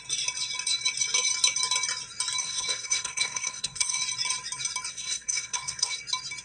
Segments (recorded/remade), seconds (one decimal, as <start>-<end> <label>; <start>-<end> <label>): 0.0-2.4 recorded; 2.4-4.0 remade; 4.0-4.9 recorded; 4.9-6.0 remade; 6.0-6.4 recorded